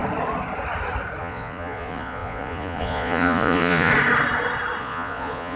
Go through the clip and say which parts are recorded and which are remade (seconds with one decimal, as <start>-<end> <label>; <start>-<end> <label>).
0.0-1.2 recorded; 1.2-3.9 remade; 3.9-4.8 recorded; 4.8-5.6 remade